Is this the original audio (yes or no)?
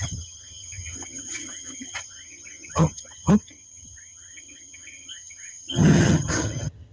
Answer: no